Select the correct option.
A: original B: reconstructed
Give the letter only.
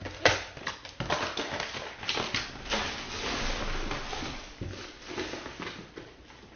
A